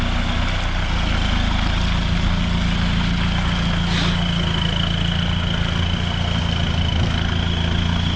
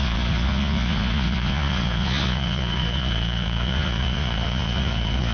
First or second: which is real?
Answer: first